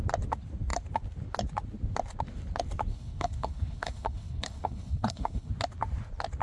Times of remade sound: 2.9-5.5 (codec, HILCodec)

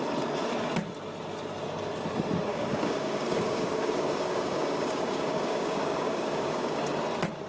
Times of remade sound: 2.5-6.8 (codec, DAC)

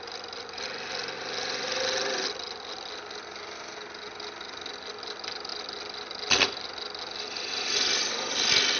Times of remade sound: none

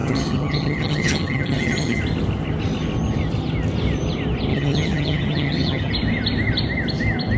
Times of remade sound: 0.0-2.0 (vocoder, HiFi-GAN); 4.5-5.9

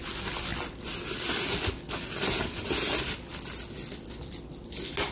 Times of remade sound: none

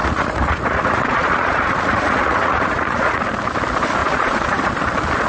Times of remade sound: 0.0-3.2 (vocoder, Vocos); 4.0-4.7